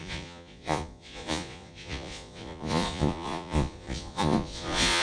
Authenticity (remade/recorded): remade